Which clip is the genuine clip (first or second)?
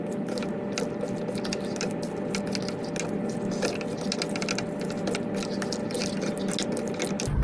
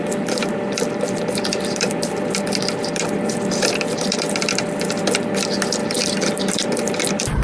first